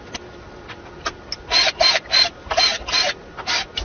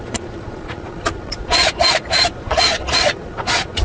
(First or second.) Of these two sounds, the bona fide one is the first